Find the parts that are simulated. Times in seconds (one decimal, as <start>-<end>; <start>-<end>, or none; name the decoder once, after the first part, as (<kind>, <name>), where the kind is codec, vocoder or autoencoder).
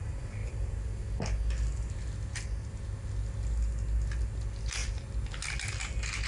none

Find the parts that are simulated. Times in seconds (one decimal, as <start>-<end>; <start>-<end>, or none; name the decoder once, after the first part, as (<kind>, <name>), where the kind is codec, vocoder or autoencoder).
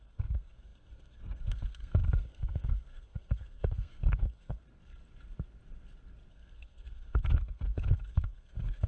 0.0-4.6 (codec, SNAC); 6.3-8.9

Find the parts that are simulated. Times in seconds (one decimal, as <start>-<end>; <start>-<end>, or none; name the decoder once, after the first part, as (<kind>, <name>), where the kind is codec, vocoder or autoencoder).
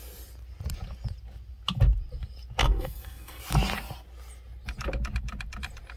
2.6-3.4 (codec, SNAC)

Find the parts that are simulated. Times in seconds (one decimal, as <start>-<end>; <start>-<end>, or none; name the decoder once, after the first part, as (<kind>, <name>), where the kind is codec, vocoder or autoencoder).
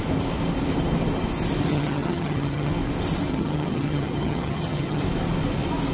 1.7-2.7 (vocoder, HiFi-GAN); 3.3-5.0